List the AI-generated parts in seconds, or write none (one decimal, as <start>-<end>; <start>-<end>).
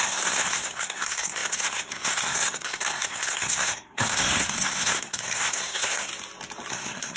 0.0-6.1; 6.7-7.2